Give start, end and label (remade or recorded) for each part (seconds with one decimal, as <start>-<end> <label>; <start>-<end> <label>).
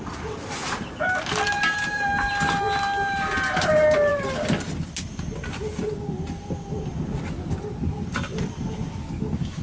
0.0-9.0 recorded; 9.0-9.6 remade